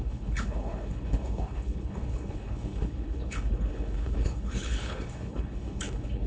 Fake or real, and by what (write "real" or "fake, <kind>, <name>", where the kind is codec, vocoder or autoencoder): fake, codec, HILCodec